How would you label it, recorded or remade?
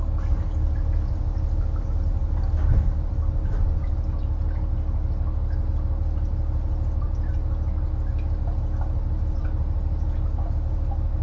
recorded